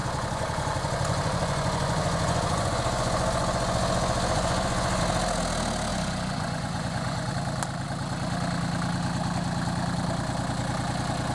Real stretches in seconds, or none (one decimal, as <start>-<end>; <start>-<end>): 5.0-5.9; 7.3-11.3